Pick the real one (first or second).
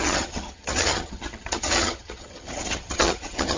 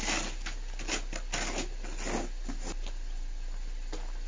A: second